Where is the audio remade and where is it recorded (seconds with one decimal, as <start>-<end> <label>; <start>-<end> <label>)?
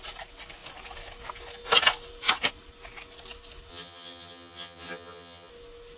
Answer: 0.0-3.7 recorded; 3.7-5.5 remade; 5.5-6.0 recorded